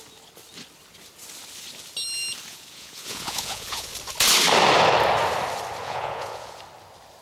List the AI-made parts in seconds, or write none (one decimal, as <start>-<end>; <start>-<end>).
2.5-3.9; 5.8-6.6